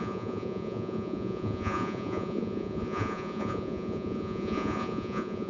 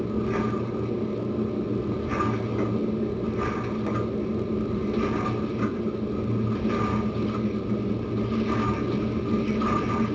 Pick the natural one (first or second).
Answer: second